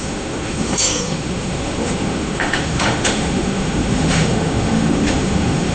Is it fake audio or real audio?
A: fake